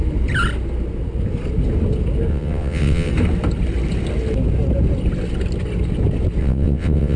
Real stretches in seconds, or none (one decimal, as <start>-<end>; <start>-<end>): 0.0-2.3; 3.1-6.4